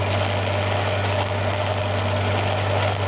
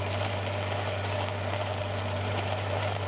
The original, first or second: first